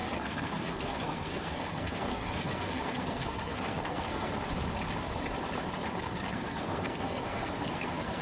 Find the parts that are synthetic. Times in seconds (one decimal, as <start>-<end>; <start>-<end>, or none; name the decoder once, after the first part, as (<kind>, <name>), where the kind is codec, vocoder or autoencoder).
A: 0.0-4.3 (codec, SNAC); 6.0-8.2